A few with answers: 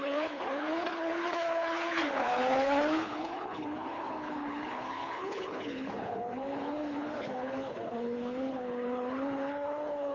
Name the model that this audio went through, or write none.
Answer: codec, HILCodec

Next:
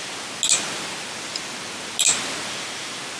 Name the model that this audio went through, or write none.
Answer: none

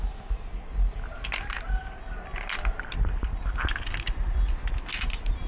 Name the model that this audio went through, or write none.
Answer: none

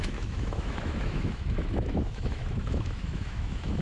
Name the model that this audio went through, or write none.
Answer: autoencoder, DAC-VAE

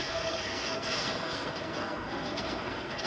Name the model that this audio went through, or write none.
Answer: codec, SNAC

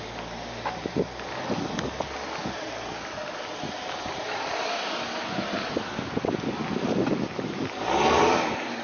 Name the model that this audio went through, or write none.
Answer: none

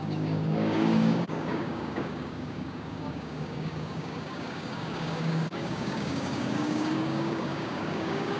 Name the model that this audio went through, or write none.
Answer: codec, DAC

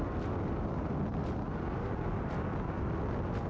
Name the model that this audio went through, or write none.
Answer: none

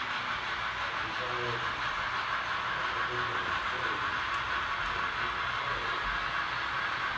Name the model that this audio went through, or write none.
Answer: none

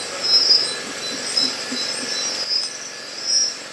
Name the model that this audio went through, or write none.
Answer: none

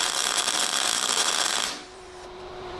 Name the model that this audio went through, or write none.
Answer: vocoder, BigVGAN v2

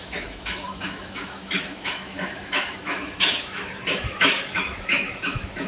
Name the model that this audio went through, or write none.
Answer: autoencoder, DAC-VAE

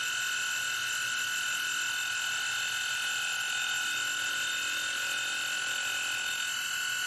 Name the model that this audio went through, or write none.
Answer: none